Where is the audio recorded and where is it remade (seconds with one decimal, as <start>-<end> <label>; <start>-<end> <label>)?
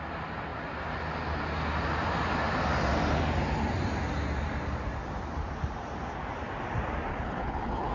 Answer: 0.0-7.1 recorded; 7.1-7.9 remade